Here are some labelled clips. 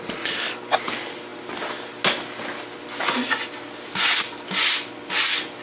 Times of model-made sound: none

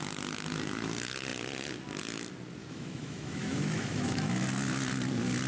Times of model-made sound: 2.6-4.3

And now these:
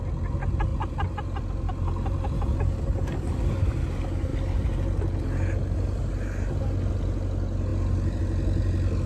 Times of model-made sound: none

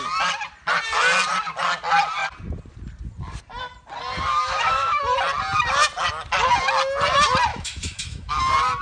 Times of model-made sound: 4.3-5.0; 7.5-8.4

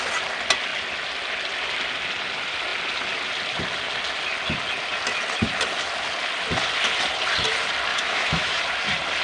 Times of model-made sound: 7.9-8.6